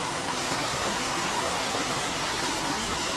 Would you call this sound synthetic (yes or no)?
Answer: yes